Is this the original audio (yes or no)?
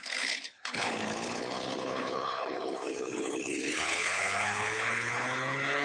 no